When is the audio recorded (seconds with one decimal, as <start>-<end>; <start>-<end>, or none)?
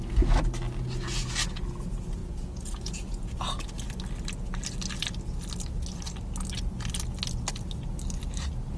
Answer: 0.0-2.2; 3.8-8.8